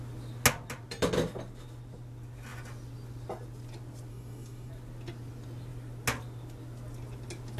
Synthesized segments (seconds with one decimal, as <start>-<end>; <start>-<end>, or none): 4.1-4.7